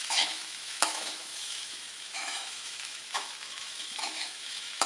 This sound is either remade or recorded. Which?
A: remade